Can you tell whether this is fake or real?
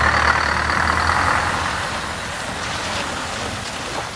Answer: real